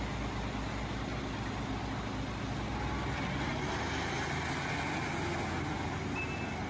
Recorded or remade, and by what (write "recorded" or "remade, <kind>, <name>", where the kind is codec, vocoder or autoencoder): recorded